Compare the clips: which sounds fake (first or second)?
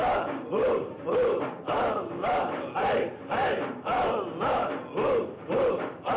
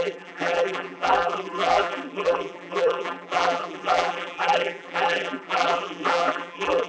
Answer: second